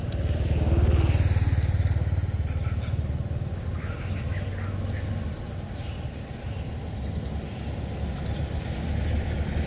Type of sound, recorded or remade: recorded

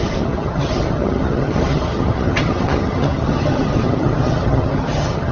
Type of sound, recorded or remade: remade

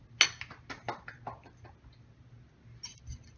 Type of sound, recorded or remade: recorded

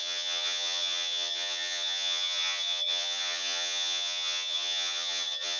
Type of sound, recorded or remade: remade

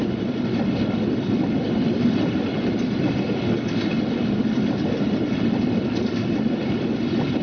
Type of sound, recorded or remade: recorded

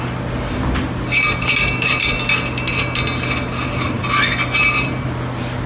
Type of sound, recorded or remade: recorded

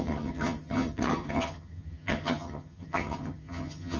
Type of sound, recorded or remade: remade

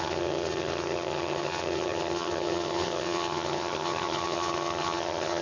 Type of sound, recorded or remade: remade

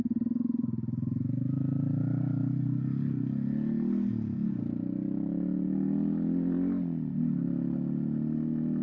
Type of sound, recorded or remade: recorded